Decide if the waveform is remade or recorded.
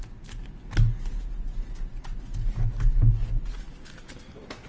recorded